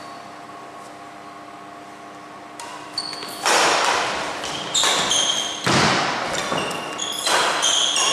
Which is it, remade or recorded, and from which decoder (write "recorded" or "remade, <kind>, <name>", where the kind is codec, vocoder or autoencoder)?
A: recorded